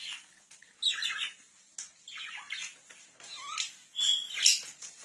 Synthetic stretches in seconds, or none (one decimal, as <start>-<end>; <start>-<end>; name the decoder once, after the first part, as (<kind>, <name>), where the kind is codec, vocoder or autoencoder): none